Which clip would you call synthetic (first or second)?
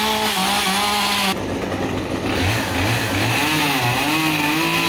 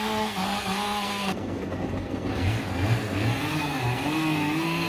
second